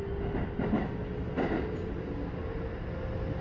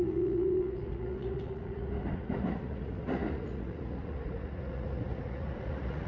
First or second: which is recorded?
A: first